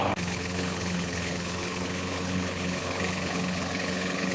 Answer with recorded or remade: remade